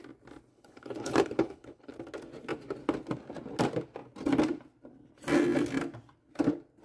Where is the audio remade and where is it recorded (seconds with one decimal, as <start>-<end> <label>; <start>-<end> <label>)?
0.0-0.5 recorded; 0.5-1.9 remade; 1.9-6.8 recorded